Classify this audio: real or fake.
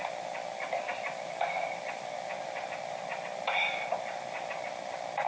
real